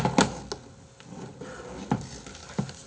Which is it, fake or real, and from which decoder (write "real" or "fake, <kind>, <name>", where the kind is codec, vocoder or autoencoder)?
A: real